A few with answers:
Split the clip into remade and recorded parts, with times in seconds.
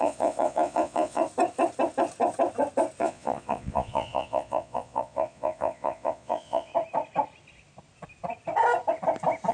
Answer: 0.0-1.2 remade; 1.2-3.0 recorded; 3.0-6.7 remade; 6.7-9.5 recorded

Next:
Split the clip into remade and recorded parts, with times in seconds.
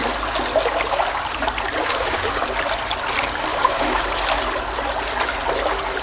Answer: 0.0-1.8 recorded; 1.8-2.4 remade; 2.4-3.5 recorded; 3.5-4.0 remade; 4.0-6.0 recorded